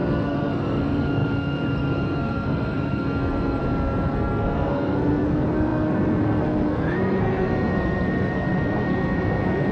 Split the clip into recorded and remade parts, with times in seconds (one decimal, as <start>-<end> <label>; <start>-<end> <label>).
0.0-3.6 remade; 3.6-4.1 recorded; 4.1-9.7 remade